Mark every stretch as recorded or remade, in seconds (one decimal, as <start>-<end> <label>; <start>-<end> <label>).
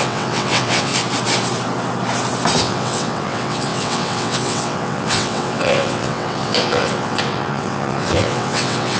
0.0-0.9 remade; 0.9-2.6 recorded; 2.6-9.0 remade